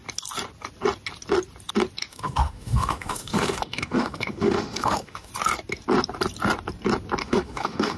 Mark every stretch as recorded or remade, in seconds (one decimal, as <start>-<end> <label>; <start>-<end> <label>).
0.0-2.1 recorded; 2.1-5.3 remade; 5.3-7.2 recorded; 7.2-8.0 remade